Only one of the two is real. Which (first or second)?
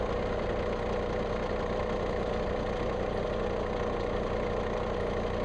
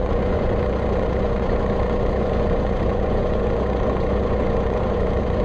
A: first